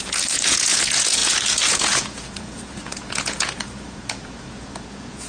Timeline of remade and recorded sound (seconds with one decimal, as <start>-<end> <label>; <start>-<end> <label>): 0.0-5.3 remade